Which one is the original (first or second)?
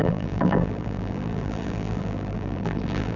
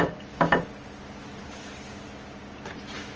second